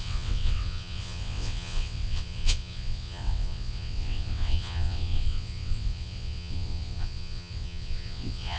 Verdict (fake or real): fake